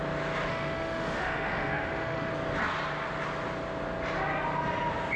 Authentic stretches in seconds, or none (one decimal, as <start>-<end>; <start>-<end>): 0.0-0.5; 2.3-5.2